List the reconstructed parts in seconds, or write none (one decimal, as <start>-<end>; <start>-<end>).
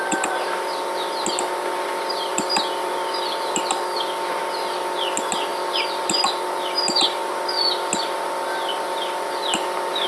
2.3-3.1